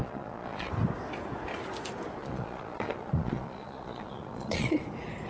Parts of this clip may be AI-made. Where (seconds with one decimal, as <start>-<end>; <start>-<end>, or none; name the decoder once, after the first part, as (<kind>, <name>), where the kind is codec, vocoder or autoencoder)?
0.0-0.7 (vocoder, Vocos); 2.2-4.8